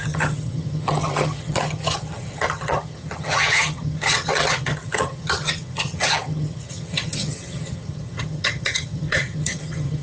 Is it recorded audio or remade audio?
remade